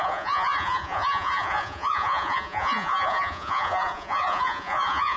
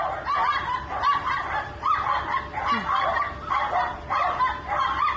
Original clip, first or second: second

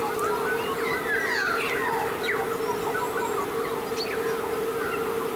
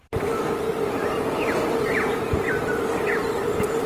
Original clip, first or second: first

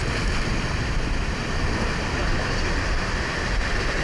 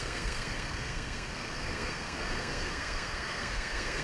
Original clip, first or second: first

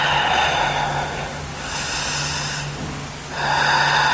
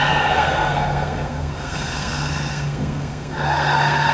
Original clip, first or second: first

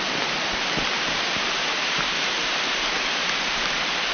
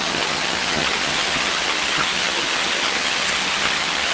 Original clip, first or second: first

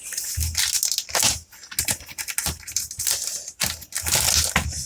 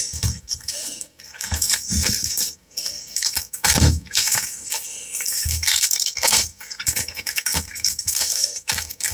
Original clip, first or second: first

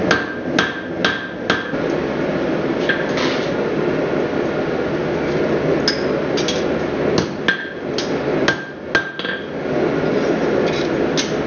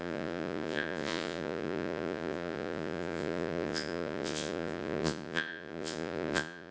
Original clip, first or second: first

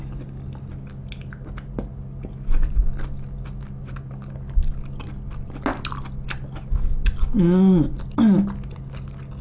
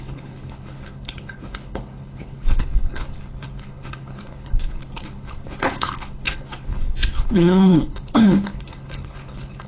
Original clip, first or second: first